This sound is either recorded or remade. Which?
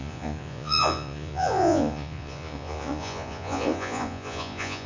remade